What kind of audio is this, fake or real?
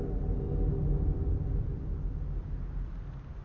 real